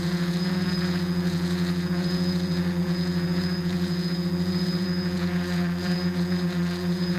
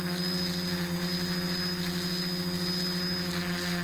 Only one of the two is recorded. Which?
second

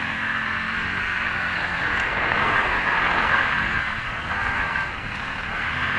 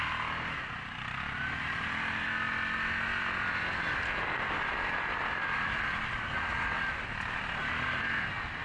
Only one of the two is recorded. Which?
second